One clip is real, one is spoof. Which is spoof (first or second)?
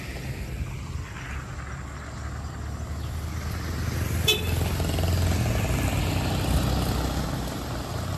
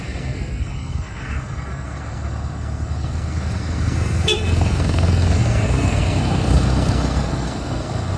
second